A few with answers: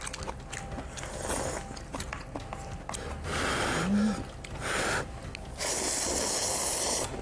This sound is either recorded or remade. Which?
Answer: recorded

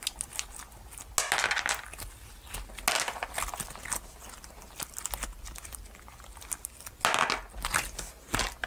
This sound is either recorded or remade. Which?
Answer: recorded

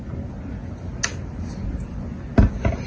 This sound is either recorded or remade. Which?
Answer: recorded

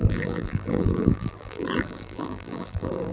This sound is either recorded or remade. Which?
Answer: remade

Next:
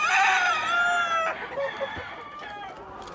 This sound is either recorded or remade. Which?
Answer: recorded